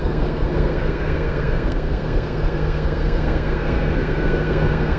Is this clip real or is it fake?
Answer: fake